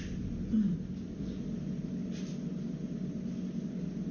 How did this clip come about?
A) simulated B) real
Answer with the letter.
B